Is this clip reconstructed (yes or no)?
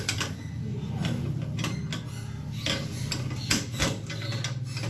no